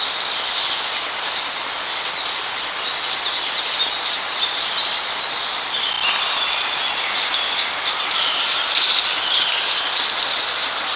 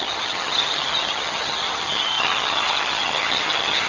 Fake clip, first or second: second